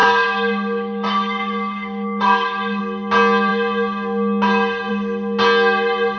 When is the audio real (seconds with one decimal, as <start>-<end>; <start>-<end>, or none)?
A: 2.8-6.2